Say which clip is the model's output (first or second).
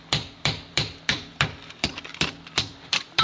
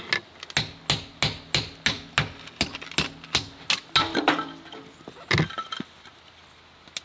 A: first